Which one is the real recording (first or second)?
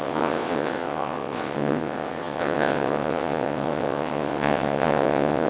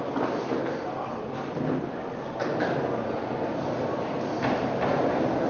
second